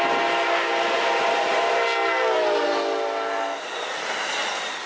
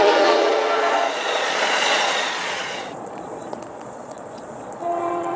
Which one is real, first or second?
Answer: first